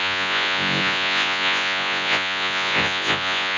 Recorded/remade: remade